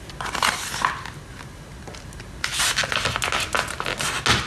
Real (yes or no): yes